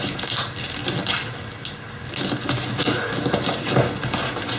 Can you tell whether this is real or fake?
real